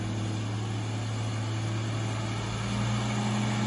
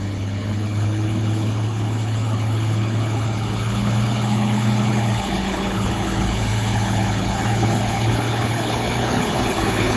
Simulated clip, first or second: second